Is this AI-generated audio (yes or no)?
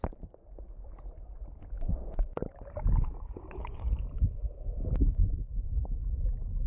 no